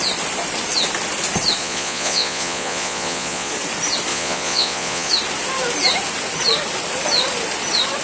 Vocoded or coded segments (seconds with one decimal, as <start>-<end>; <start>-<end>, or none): 1.6-3.5; 4.1-5.1